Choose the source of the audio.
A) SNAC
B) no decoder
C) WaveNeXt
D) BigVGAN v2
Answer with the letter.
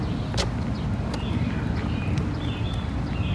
B